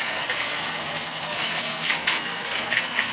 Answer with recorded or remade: remade